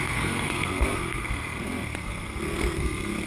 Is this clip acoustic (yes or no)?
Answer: no